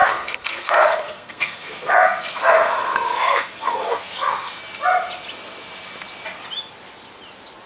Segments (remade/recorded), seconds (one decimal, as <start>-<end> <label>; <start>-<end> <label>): 0.0-4.6 remade; 4.6-7.7 recorded